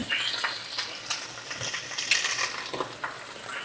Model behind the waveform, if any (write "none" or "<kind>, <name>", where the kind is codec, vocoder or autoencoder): none